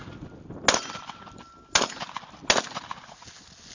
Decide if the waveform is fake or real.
real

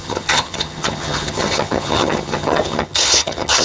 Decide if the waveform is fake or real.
fake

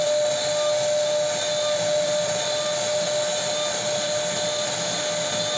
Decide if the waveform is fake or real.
real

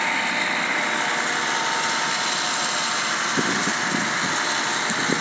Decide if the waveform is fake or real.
real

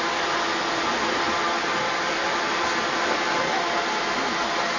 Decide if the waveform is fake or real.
real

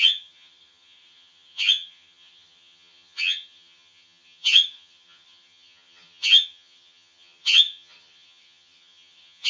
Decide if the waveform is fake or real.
fake